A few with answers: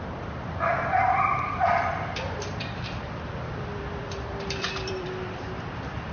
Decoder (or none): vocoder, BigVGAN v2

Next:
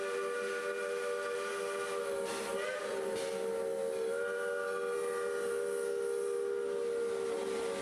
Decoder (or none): none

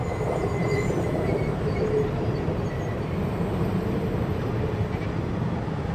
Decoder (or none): vocoder, BigVGAN v2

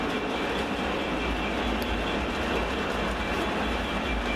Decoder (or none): none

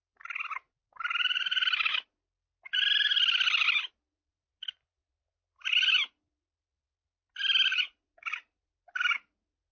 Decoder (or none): none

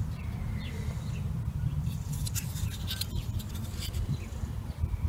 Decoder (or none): vocoder, BigVGAN v2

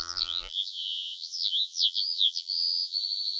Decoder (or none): vocoder, BigVGAN v2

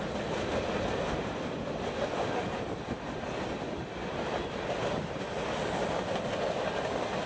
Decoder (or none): none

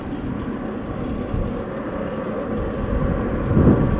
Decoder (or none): none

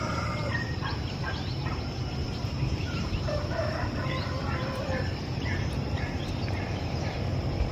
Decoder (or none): vocoder, BigVGAN v2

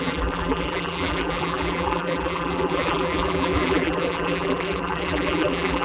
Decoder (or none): vocoder, BigVGAN v2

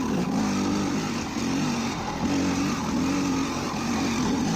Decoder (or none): none